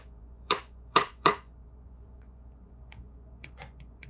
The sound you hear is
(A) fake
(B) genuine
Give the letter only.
A